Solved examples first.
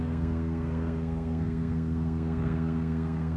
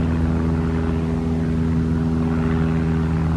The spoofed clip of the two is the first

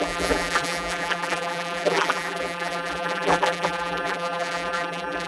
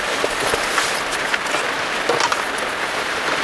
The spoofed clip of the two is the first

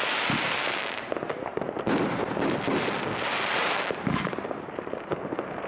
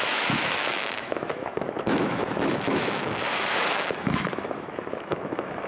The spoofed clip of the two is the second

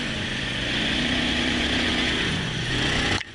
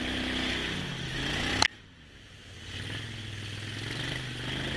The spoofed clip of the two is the first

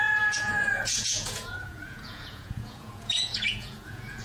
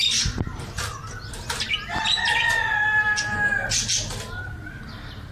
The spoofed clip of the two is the first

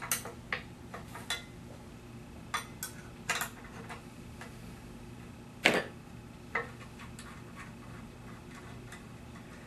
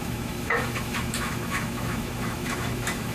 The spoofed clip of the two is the second